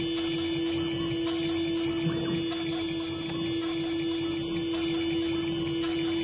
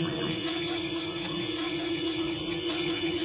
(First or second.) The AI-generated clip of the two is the second